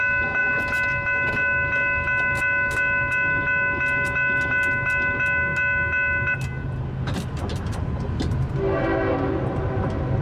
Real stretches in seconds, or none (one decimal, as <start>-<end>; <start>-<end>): 0.0-10.2